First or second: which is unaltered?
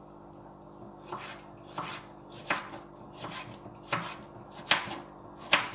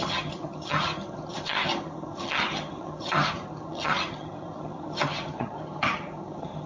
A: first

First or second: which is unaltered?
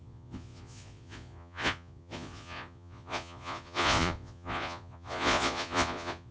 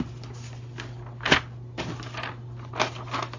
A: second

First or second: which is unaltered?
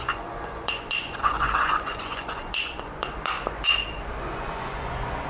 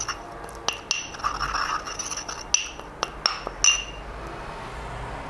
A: second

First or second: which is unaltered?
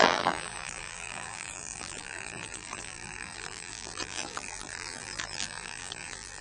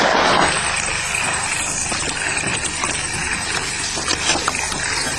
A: second